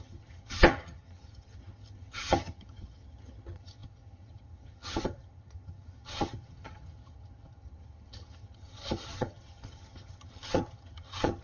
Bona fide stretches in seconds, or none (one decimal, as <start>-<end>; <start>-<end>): none